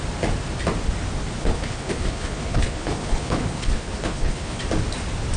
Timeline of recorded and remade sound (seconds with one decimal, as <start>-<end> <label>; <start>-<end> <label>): 0.0-1.4 recorded; 1.4-4.6 remade; 4.6-5.4 recorded